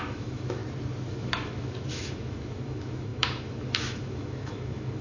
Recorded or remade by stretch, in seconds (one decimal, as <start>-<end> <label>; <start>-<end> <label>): 0.0-0.6 remade; 0.6-1.1 recorded; 1.1-5.0 remade